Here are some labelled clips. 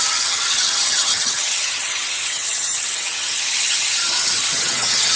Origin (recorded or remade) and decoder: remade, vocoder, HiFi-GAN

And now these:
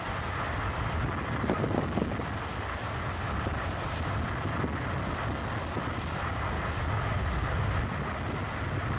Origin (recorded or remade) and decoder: recorded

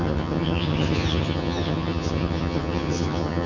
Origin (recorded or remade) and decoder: remade, vocoder, HiFi-GAN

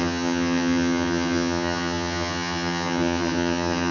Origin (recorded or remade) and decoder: remade, vocoder, HiFi-GAN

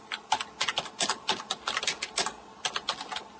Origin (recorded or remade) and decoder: recorded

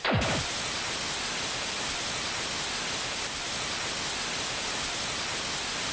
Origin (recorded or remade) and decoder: recorded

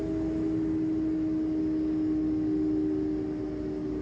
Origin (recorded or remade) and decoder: recorded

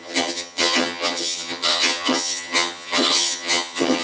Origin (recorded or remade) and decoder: remade, vocoder, HiFi-GAN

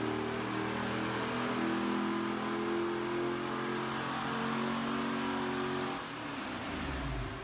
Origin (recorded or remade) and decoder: recorded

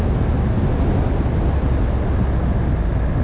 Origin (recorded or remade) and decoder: recorded